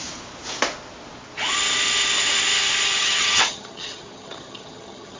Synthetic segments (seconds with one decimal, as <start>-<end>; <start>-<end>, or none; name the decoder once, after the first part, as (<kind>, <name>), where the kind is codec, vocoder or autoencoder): 3.0-5.2 (vocoder, HiFi-GAN)